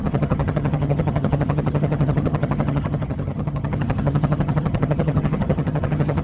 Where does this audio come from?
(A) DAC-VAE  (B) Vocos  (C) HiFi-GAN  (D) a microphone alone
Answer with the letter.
C